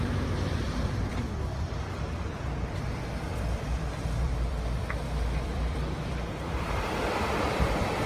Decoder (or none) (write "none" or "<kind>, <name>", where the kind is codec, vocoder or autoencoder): vocoder, BigVGAN v2